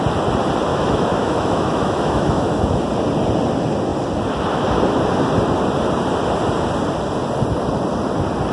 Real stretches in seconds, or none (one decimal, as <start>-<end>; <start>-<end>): 0.0-0.7; 2.8-8.5